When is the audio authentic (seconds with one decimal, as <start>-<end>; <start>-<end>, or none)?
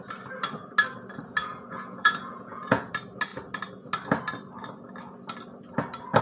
0.0-1.4; 2.9-6.2